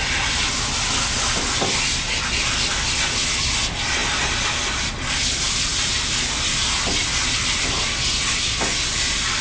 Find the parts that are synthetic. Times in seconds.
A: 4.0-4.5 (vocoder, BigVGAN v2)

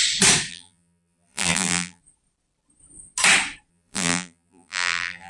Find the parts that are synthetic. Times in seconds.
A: 0.5-2.0 (vocoder, BigVGAN v2); 3.7-5.3

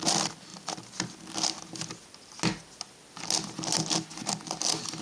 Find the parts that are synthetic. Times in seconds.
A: 0.5-1.1 (vocoder, BigVGAN v2)

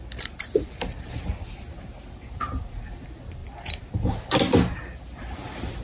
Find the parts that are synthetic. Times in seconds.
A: 0.0-5.8 (vocoder, BigVGAN v2)

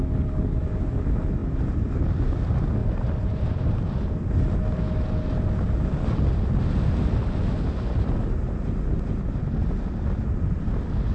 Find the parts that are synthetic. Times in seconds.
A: 2.8-4.1 (vocoder, BigVGAN v2)

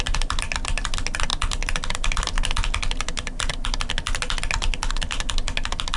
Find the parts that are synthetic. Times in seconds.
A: none